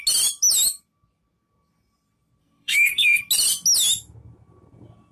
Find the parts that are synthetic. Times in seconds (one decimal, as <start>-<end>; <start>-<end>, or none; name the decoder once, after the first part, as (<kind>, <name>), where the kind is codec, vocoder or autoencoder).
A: 2.4-3.2 (codec, SNAC)